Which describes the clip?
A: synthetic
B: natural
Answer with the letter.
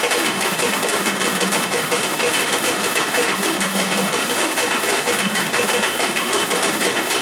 A